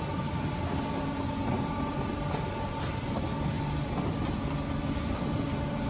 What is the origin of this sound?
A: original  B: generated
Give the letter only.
A